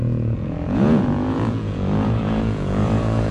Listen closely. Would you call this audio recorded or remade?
remade